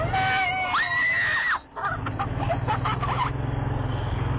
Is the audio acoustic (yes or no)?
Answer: yes